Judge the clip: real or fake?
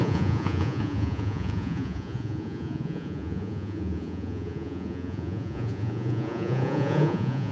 fake